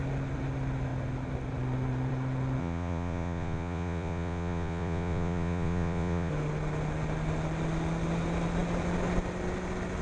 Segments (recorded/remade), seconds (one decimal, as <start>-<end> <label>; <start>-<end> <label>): 0.0-2.6 recorded; 2.6-6.3 remade; 6.3-10.0 recorded